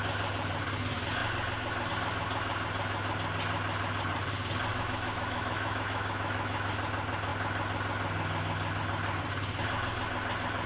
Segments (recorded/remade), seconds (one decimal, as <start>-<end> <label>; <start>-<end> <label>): 0.0-4.7 recorded; 4.7-6.7 remade; 6.7-10.7 recorded